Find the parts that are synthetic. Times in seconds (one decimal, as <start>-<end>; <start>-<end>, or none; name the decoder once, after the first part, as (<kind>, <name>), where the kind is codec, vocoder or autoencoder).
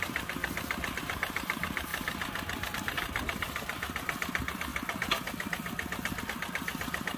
0.0-0.4 (vocoder, BigVGAN v2); 1.0-1.9; 2.7-4.7; 6.2-7.2